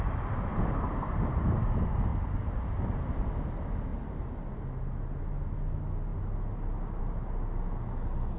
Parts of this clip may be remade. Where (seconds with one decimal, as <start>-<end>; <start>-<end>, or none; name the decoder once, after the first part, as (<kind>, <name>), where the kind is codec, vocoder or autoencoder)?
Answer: none